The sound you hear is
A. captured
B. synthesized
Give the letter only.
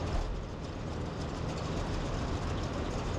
B